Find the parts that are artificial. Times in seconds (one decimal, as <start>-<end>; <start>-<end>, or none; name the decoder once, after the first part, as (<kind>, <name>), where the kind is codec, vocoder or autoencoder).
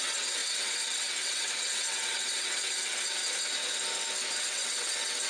0.0-3.2 (vocoder, WaveNeXt); 4.4-5.3